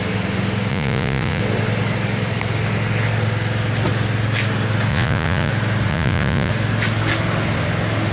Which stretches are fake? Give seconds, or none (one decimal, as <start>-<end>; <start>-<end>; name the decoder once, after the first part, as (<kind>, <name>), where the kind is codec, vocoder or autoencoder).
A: 0.7-1.4 (vocoder, Vocos); 4.9-5.5; 5.9-6.5